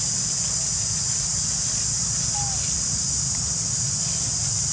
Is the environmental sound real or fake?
real